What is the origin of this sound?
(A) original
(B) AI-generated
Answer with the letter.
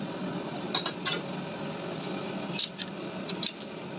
A